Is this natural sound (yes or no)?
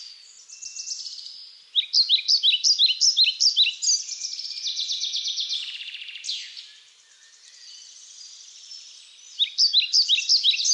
yes